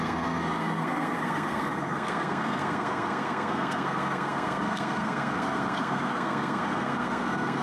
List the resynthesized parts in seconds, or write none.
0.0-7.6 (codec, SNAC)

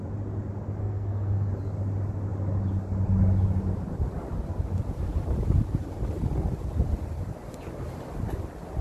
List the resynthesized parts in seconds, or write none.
0.8-1.5 (codec, SNAC)